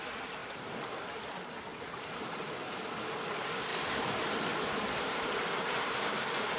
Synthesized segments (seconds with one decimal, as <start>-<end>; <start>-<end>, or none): 0.4-1.2; 1.7-2.6; 3.7-5.3